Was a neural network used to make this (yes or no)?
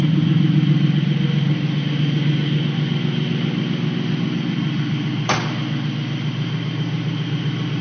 no